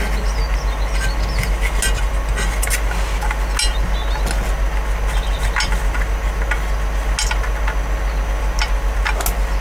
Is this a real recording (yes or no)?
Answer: yes